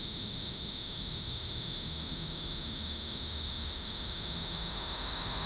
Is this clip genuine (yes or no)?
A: no